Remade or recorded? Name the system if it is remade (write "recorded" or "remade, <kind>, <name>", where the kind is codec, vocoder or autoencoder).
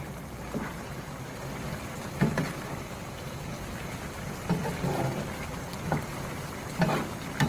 recorded